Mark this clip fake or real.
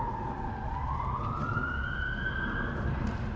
real